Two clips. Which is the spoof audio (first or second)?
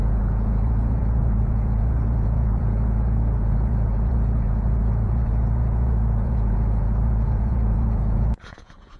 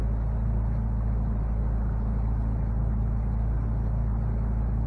first